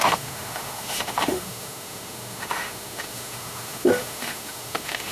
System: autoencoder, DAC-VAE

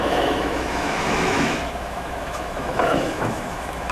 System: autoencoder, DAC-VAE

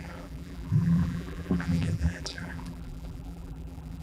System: vocoder, BigVGAN v2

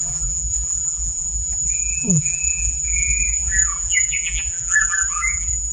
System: vocoder, BigVGAN v2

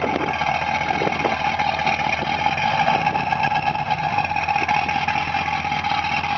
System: none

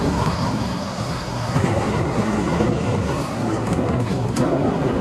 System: codec, SNAC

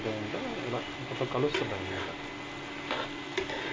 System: none